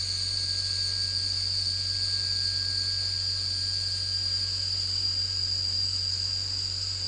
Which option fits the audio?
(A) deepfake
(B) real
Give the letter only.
B